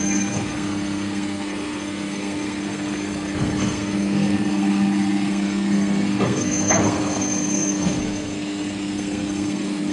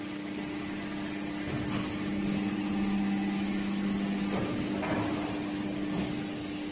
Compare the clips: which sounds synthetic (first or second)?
first